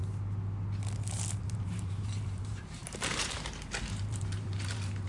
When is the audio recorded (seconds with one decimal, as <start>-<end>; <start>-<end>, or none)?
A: 0.0-1.4